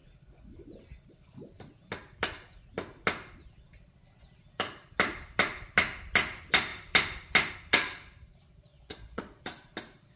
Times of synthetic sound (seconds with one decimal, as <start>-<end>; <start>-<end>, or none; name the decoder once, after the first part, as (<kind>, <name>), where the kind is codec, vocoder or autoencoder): 8.7-9.4 (vocoder, Vocos)